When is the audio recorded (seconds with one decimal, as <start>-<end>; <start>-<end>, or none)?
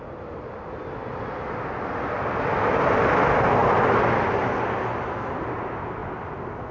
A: 0.0-6.7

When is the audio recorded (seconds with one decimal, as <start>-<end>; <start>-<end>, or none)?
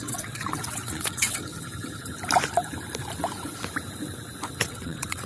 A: 1.5-4.7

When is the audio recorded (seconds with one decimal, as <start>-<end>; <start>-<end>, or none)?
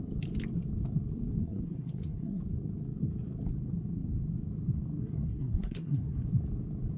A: 0.0-1.4; 2.4-5.0; 6.3-7.0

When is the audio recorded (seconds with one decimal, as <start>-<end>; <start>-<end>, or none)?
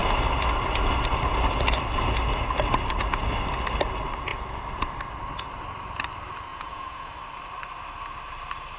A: 0.0-6.5; 7.1-8.8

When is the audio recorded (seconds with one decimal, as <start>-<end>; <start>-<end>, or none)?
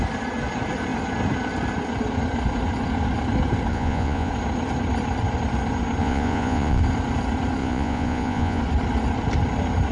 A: 0.0-3.7; 4.3-6.0; 6.8-7.6; 8.6-9.9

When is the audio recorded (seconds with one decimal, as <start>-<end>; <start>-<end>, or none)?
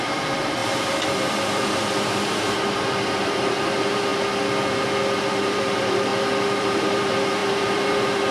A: 4.1-5.3; 6.1-6.6